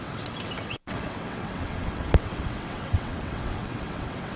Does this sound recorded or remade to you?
remade